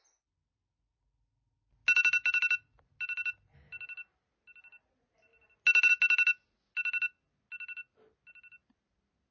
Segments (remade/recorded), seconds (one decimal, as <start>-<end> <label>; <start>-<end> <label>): 0.0-9.3 recorded